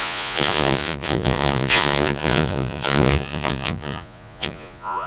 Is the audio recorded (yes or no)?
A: no